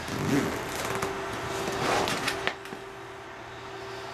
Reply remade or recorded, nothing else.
recorded